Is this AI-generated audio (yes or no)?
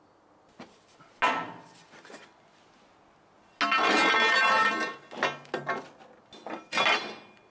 no